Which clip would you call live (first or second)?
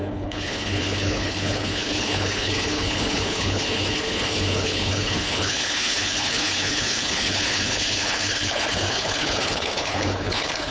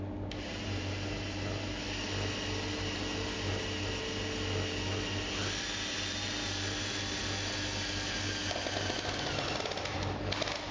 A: second